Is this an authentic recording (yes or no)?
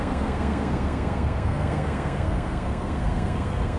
no